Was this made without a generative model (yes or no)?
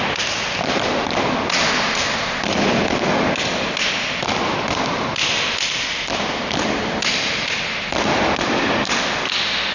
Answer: yes